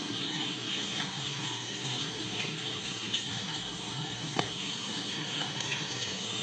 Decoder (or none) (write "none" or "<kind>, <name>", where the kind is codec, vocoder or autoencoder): codec, SNAC